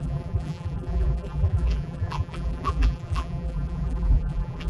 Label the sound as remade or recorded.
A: remade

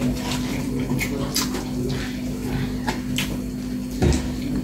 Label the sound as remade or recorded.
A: recorded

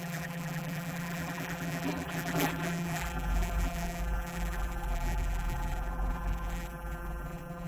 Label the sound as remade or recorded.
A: remade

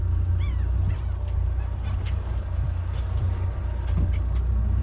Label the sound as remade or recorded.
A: recorded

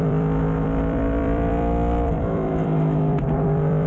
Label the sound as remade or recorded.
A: remade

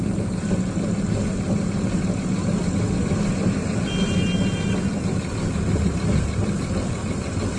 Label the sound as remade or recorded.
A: recorded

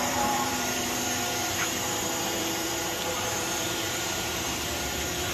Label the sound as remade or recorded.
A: remade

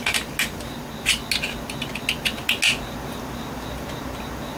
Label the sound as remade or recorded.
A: recorded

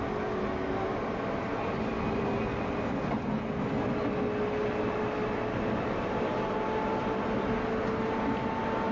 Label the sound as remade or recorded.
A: recorded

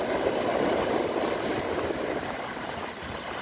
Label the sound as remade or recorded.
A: remade